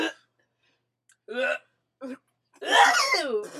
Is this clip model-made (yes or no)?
no